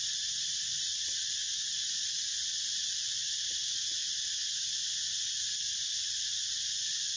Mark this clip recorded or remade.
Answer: recorded